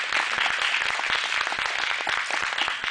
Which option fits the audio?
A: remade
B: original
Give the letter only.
B